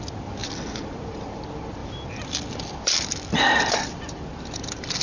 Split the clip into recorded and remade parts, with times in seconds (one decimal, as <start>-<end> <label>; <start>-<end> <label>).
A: 0.0-0.4 recorded; 0.4-1.4 remade; 1.4-1.8 recorded; 1.8-5.0 remade